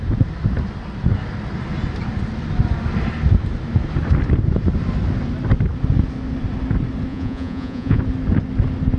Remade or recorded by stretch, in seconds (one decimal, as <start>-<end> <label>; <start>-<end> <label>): 0.0-7.1 recorded; 7.1-8.0 remade; 8.0-9.0 recorded